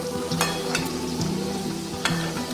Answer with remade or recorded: remade